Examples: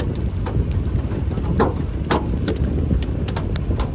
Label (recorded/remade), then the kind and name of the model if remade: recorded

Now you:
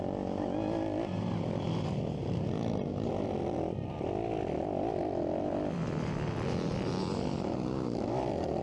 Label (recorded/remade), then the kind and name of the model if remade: recorded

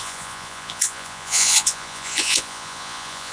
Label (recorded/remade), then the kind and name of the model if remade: remade, vocoder, Vocos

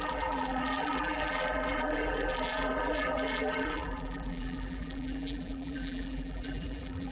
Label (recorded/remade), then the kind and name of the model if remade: remade, vocoder, BigVGAN v2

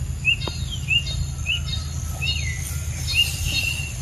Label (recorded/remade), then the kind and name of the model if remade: recorded